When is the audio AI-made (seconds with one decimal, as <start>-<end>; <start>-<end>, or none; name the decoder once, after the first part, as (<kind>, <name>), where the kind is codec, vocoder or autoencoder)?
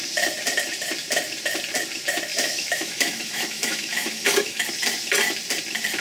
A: 2.3-4.7 (autoencoder, DAC-VAE)